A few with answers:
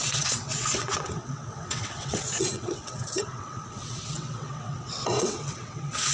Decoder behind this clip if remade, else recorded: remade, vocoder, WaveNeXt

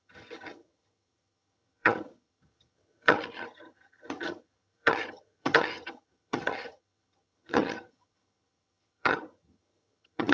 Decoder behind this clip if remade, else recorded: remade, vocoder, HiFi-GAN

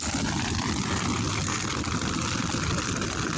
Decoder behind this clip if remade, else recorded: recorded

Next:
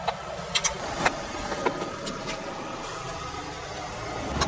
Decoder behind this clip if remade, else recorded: recorded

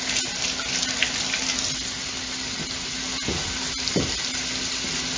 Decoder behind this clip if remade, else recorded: recorded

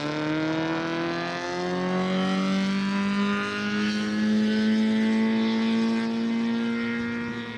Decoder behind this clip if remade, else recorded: recorded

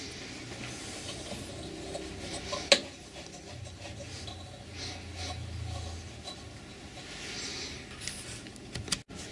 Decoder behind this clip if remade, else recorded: recorded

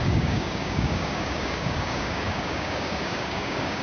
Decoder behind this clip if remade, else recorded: remade, codec, DAC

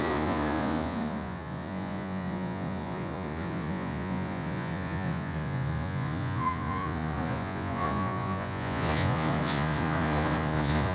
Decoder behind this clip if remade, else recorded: remade, vocoder, Vocos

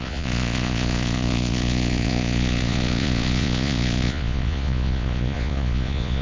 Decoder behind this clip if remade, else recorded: remade, vocoder, Vocos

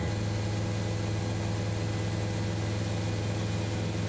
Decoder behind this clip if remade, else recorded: recorded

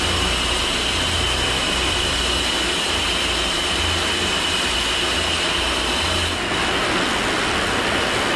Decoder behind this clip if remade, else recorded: recorded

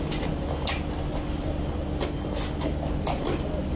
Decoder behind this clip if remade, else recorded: recorded